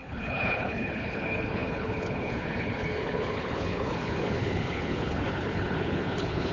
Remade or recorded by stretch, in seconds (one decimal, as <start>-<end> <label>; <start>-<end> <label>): 0.0-6.5 remade